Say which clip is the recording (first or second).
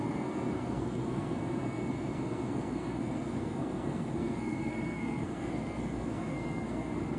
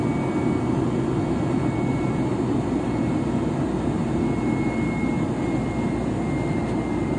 second